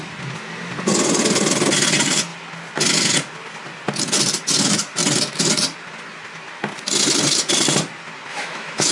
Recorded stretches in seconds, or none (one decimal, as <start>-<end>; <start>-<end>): 0.0-8.3